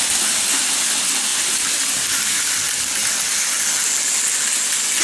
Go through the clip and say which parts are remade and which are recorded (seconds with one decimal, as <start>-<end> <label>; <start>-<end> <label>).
0.0-5.0 recorded